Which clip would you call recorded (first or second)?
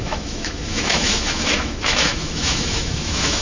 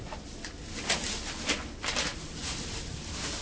second